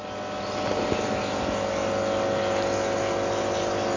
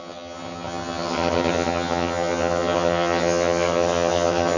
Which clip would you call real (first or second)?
first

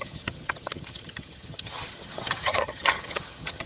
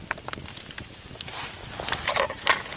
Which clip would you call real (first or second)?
second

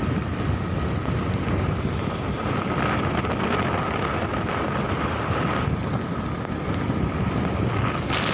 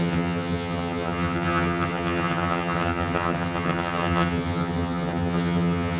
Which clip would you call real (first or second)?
first